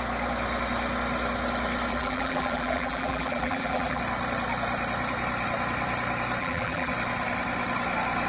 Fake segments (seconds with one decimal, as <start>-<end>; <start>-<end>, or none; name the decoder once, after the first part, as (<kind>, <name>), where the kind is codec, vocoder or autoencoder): 1.9-4.0 (vocoder, BigVGAN v2); 6.4-6.9